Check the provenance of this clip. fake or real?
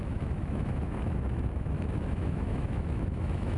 fake